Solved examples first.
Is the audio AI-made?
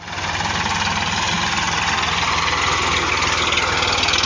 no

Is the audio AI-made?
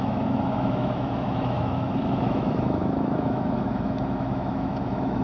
yes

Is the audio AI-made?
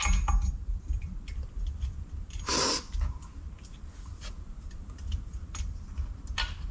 no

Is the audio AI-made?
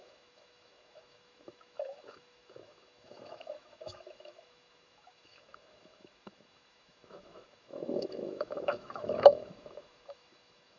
yes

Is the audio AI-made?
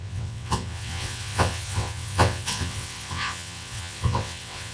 yes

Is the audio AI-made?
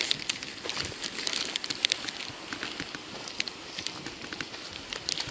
no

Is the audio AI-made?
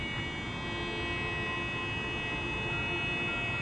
no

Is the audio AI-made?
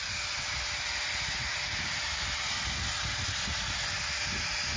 no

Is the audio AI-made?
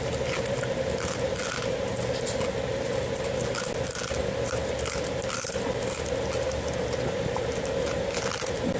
no